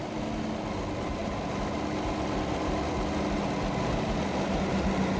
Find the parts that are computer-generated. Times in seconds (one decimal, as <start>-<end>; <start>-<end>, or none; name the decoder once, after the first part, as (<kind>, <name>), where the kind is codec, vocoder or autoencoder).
none